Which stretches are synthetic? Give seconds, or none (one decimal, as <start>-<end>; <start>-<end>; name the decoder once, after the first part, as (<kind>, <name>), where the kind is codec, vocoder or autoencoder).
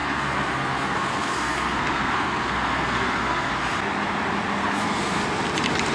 0.0-3.5 (codec, SNAC); 4.6-5.2